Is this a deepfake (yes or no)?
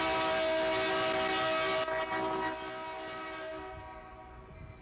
no